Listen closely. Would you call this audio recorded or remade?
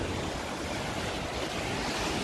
recorded